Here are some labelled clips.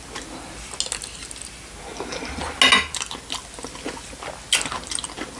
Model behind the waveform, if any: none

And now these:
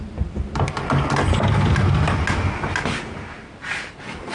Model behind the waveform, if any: none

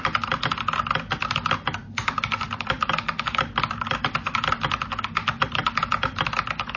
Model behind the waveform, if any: none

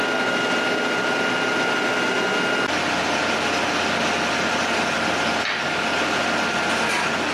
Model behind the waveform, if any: none